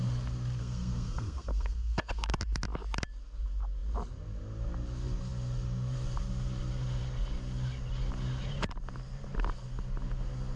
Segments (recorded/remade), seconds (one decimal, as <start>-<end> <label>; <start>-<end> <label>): 0.0-0.6 recorded; 0.6-2.3 remade; 2.3-10.6 recorded